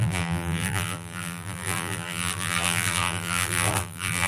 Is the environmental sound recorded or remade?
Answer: remade